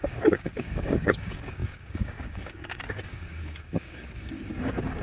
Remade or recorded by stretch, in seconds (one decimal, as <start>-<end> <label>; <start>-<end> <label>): 0.0-5.0 remade